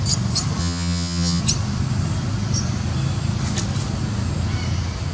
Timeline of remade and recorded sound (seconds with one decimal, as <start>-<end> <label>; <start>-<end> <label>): 0.0-0.6 recorded; 0.6-1.4 remade; 1.4-5.1 recorded

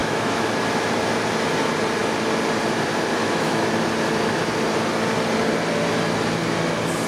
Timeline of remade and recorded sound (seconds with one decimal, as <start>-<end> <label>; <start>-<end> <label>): 0.0-0.5 remade; 0.5-3.2 recorded; 3.2-3.7 remade; 3.7-7.1 recorded

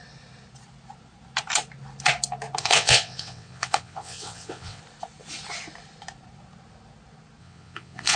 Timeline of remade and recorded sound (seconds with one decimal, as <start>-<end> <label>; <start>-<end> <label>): 0.0-2.6 recorded; 2.6-4.8 remade; 4.8-7.4 recorded; 7.4-8.2 remade

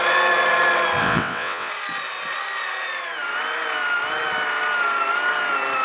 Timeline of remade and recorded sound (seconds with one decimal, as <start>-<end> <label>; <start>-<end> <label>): 0.0-1.0 recorded; 1.0-1.7 remade; 1.7-5.8 recorded

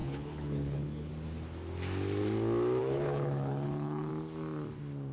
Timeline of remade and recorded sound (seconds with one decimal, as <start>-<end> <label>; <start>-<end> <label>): 0.0-1.1 remade; 1.1-2.8 recorded; 2.8-4.1 remade; 4.1-5.1 recorded

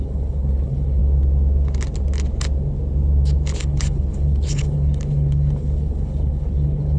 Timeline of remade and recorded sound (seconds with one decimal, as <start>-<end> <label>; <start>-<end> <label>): 0.0-1.0 remade; 1.0-3.6 recorded; 3.6-7.0 remade

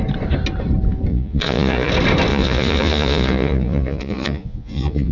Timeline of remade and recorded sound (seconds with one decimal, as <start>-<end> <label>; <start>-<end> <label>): 0.0-1.1 recorded; 1.1-1.9 remade; 1.9-2.3 recorded; 2.3-5.1 remade